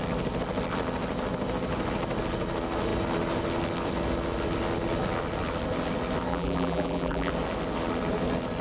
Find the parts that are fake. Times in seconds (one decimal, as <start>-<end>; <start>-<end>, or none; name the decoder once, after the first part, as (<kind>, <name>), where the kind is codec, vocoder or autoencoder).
6.3-7.3 (vocoder, BigVGAN v2)